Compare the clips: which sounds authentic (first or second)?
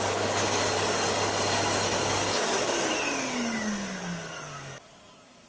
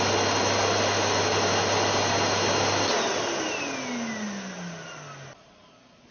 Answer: second